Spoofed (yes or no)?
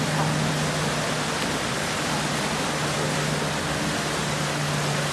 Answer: no